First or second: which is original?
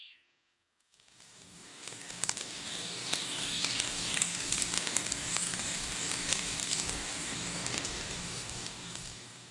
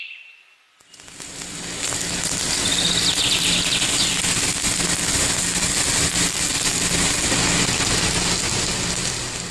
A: second